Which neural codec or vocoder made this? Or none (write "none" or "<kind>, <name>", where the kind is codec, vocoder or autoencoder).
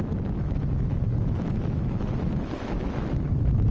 autoencoder, DAC-VAE